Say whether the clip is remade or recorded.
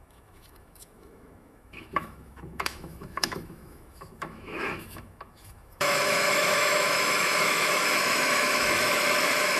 remade